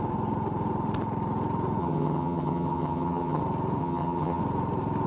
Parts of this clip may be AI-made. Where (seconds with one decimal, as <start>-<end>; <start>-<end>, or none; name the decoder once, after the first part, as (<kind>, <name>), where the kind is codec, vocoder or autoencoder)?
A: 1.8-3.4 (vocoder, HiFi-GAN); 3.8-4.4